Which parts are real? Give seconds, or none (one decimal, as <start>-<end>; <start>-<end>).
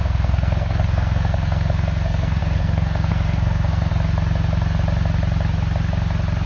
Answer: 3.9-6.5